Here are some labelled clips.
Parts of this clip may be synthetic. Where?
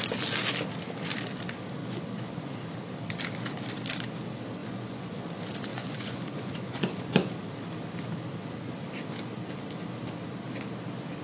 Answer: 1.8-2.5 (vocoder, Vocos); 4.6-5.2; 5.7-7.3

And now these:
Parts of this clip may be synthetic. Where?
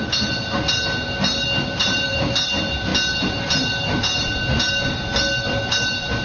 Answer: 1.8-2.3 (vocoder, BigVGAN v2)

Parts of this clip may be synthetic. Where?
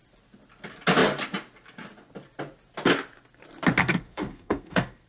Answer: 3.8-5.1 (codec, SNAC)